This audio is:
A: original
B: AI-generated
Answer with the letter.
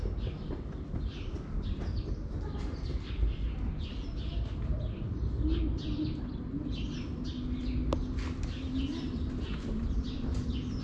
A